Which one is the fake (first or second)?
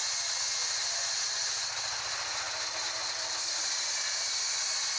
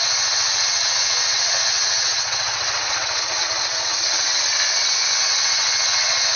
second